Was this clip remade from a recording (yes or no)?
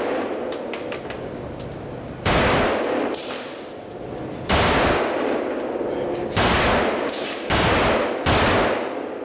no